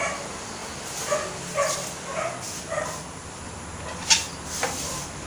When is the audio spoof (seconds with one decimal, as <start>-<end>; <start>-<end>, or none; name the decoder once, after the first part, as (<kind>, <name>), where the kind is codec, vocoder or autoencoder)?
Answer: 4.3-5.3 (vocoder, BigVGAN v2)